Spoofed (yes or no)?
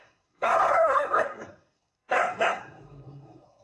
yes